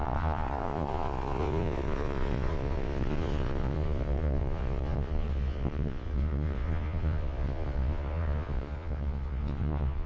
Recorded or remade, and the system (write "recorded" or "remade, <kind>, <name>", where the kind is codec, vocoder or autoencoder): remade, vocoder, Vocos